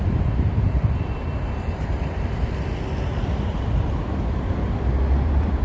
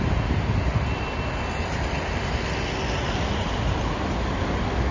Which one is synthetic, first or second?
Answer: first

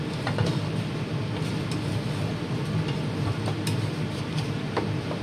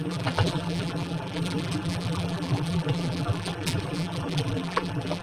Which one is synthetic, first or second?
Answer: second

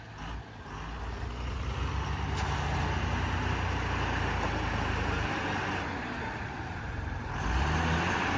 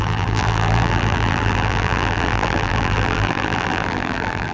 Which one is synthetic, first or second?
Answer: second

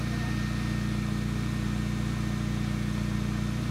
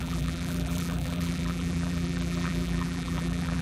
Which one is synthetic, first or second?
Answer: second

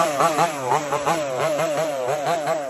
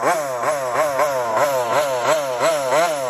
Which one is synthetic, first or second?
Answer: first